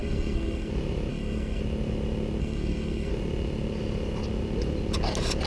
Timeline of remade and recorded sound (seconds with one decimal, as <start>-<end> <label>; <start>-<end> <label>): 0.0-0.7 remade; 0.7-1.1 recorded; 1.1-1.6 remade; 1.6-2.4 recorded; 2.4-3.1 remade; 3.1-5.5 recorded